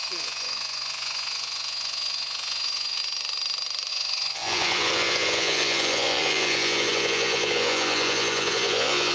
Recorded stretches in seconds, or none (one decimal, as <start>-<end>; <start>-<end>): 3.0-3.9